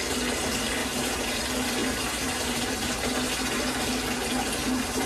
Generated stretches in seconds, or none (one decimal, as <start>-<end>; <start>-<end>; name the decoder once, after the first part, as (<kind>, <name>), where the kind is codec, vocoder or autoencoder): 0.8-1.4 (vocoder, BigVGAN v2); 1.8-3.3